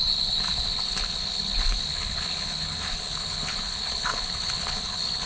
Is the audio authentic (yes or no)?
no